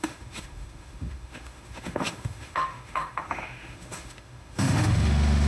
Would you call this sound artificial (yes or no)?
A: yes